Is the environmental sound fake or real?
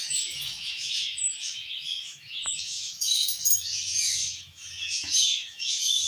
fake